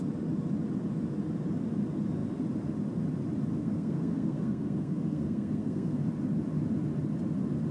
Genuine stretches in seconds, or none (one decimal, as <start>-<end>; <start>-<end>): 0.0-3.6; 6.0-7.7

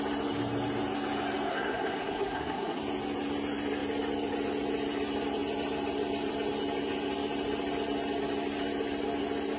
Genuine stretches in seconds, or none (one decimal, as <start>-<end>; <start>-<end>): 0.0-1.5; 2.8-9.6